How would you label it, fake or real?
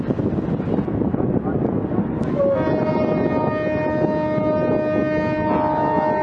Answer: real